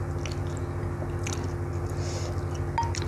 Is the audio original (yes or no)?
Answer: yes